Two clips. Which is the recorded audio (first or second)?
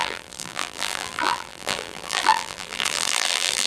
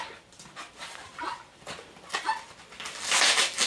second